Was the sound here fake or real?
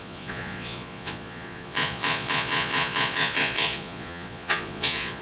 fake